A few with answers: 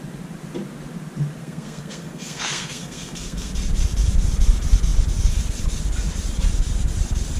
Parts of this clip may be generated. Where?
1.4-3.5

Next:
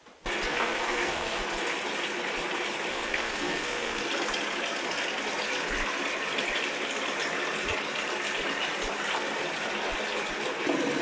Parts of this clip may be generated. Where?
0.5-1.4; 2.9-4.0

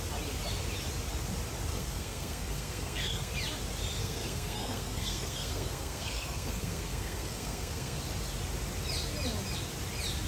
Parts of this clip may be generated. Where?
1.7-3.3; 4.0-8.0

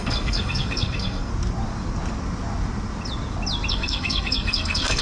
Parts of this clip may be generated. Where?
0.0-1.3; 3.7-5.0